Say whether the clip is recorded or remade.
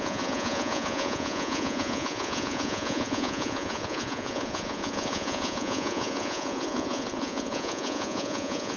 remade